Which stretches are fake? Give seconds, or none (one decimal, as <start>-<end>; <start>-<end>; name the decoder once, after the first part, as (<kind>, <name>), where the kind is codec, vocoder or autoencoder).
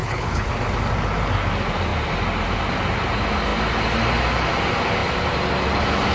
0.0-0.5 (codec, HILCodec)